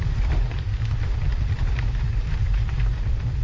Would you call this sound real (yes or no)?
no